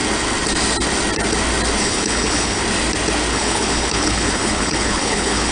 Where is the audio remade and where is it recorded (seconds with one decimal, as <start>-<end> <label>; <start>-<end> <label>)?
0.0-1.8 recorded; 1.8-2.6 remade; 2.6-3.3 recorded; 3.3-5.5 remade